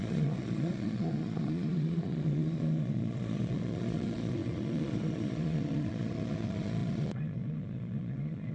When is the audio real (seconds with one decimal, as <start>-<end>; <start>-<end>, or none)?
none